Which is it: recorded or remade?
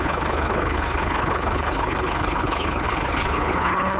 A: remade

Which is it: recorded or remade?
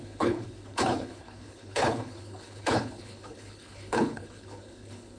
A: remade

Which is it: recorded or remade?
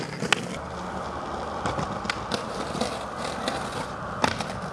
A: recorded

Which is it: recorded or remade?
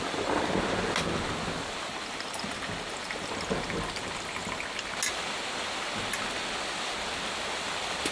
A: recorded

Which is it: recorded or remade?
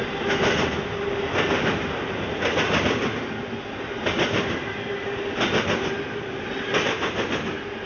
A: recorded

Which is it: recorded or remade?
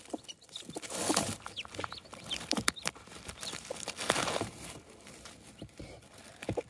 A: recorded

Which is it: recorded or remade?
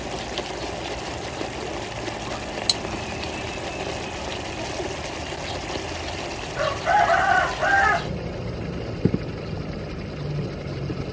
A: recorded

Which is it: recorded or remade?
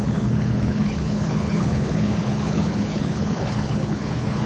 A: remade